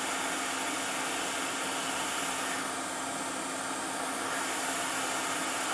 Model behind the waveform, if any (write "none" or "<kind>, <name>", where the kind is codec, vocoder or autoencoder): none